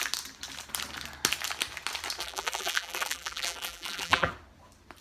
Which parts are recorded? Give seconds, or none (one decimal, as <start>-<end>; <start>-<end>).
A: 0.0-2.2; 4.3-5.0